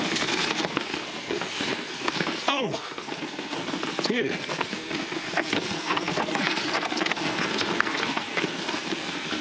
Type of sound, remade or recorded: remade